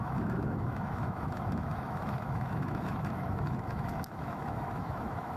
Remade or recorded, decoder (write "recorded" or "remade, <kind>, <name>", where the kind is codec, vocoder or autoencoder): remade, autoencoder, DAC-VAE